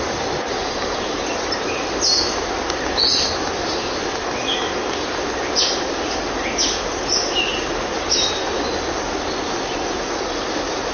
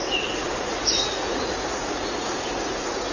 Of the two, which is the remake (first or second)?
second